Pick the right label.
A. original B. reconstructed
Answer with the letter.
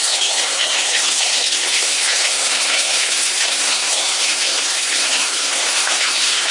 B